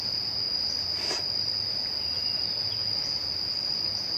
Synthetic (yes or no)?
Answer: no